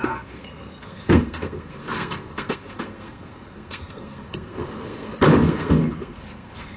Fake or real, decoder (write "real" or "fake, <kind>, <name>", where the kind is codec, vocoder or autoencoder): fake, codec, SNAC